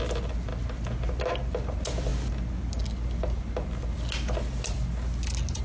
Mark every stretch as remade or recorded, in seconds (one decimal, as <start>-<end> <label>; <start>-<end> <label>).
0.0-5.6 recorded